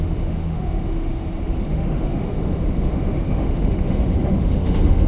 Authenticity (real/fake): fake